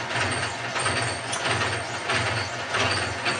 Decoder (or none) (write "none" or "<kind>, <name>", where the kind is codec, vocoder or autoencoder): vocoder, Vocos